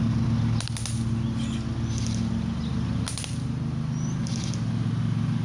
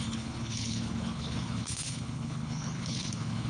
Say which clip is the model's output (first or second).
second